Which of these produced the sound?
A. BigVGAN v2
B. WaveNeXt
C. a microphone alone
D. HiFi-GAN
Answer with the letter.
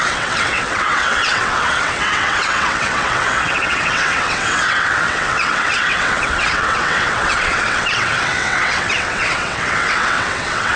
B